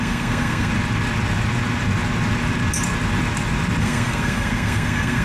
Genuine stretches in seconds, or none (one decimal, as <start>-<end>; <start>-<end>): 0.7-3.8